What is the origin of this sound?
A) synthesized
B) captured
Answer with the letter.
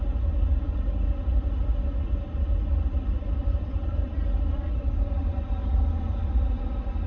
B